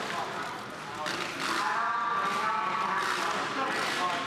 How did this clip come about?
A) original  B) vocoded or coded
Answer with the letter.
A